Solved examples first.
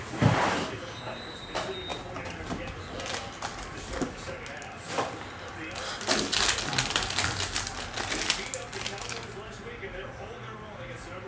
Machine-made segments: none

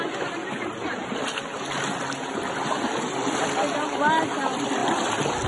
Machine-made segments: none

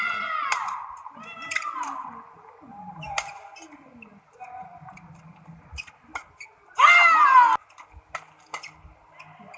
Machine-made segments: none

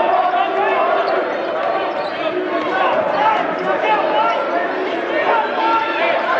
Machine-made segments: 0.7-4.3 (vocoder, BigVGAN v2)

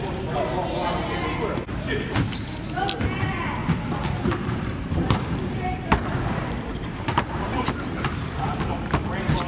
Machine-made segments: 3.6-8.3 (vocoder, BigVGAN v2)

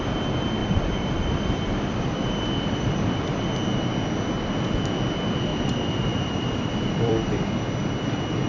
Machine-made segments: 0.6-3.2 (vocoder, BigVGAN v2); 5.5-7.3; 7.8-8.5

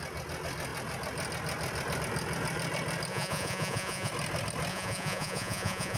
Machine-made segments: 3.1-4.1 (vocoder, Vocos); 4.7-6.0

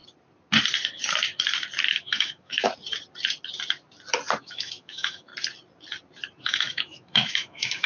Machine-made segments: 1.9-2.7 (autoencoder, DAC-VAE); 4.4-5.3; 6.4-7.9